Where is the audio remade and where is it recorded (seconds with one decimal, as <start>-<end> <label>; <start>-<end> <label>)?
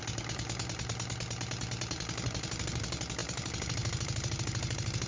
0.0-3.2 recorded; 3.2-5.1 remade